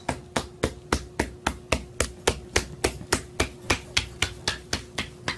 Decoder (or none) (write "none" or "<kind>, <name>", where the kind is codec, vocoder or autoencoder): none